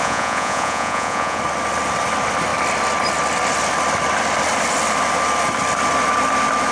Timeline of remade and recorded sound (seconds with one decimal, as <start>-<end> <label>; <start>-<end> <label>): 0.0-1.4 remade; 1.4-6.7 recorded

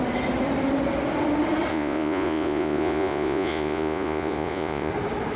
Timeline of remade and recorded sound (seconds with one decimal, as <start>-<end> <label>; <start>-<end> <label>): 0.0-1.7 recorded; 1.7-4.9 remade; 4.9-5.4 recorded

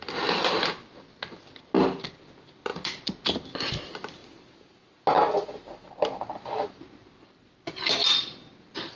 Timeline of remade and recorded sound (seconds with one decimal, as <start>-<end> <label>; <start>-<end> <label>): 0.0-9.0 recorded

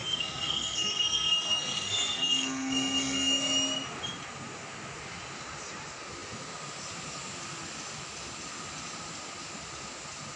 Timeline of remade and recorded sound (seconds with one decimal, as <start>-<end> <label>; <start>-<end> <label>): 0.0-3.4 remade; 3.4-10.4 recorded